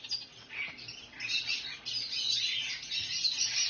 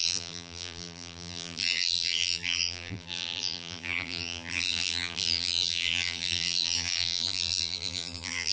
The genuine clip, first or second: first